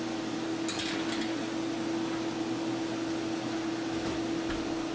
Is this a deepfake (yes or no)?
no